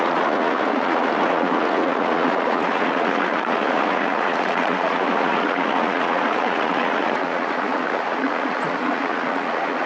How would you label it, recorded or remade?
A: remade